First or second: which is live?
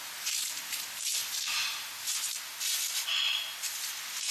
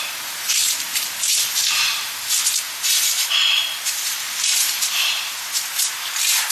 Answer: first